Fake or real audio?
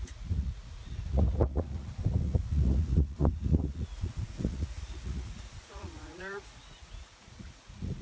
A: fake